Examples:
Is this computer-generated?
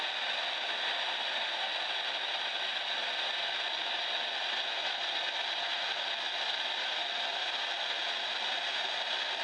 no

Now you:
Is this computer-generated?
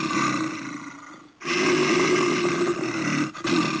no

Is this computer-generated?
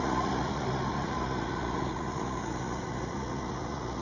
yes